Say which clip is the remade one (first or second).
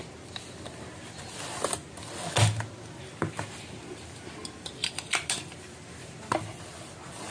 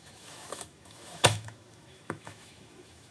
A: second